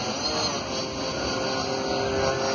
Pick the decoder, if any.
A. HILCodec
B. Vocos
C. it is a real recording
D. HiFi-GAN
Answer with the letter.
C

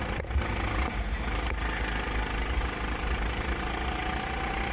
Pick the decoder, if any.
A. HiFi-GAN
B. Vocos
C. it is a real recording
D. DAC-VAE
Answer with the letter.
C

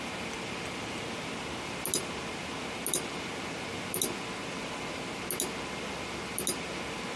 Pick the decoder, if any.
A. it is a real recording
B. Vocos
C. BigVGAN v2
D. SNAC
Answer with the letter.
A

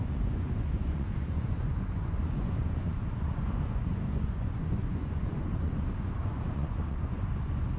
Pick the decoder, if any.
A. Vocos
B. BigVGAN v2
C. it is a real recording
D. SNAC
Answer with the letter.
A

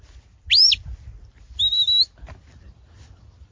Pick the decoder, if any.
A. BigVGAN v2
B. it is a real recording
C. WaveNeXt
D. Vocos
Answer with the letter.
B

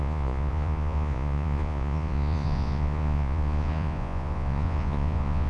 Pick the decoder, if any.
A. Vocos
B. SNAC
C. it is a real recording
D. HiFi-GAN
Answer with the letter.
A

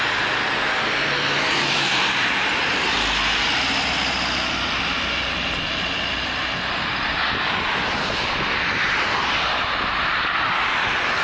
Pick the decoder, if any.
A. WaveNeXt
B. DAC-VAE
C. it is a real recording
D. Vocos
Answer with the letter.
C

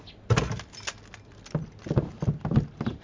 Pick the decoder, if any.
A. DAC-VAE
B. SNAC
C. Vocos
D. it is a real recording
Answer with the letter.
D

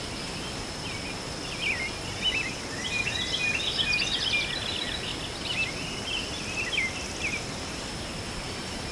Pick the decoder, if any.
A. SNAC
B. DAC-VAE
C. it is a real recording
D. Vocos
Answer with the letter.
C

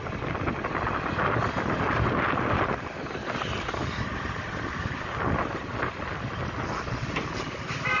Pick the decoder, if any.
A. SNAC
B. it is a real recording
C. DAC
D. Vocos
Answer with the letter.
B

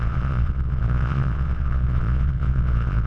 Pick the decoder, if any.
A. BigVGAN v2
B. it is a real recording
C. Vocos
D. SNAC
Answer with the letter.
C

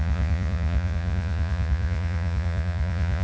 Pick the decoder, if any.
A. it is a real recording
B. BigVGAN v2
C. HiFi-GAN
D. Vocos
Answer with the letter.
D